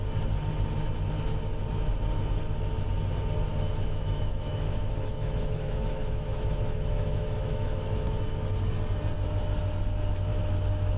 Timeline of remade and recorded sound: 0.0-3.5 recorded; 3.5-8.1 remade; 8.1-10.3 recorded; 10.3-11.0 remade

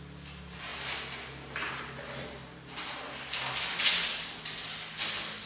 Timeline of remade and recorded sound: 0.0-5.5 recorded

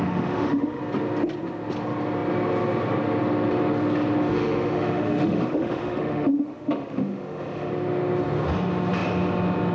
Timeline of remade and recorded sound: 0.0-0.8 remade; 0.8-4.3 recorded; 4.3-7.7 remade; 7.7-9.7 recorded

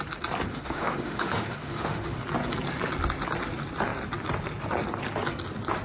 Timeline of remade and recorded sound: 0.0-0.5 recorded; 0.5-2.2 remade; 2.2-5.8 recorded